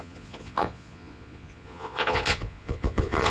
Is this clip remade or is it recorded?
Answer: remade